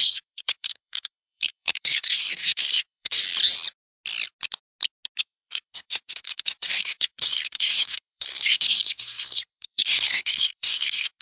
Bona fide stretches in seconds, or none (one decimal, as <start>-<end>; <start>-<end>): 3.2-5.2

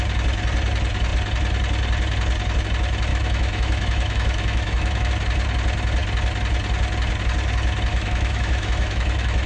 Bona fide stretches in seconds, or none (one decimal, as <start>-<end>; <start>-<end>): 0.0-3.1; 5.1-7.9

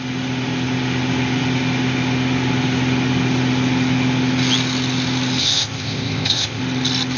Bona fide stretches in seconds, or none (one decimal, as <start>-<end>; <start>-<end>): 0.0-5.4; 6.6-7.2

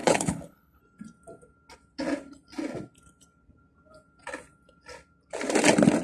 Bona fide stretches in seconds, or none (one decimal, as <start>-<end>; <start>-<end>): 0.8-6.0

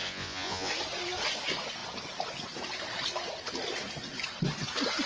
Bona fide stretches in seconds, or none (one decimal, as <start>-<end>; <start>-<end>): 0.7-5.1

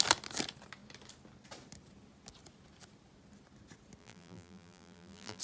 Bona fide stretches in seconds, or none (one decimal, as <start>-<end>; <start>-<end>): 0.0-4.0

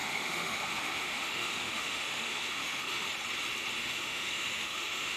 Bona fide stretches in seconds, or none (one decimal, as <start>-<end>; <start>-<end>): 3.1-3.8

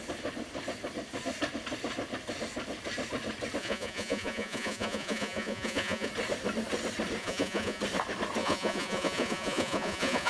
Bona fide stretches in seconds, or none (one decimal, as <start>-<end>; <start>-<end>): 0.0-3.6; 6.1-7.2; 7.8-8.4